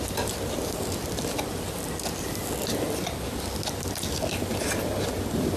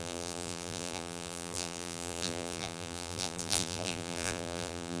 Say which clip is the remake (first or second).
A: second